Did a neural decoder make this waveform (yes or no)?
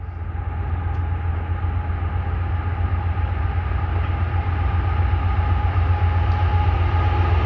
no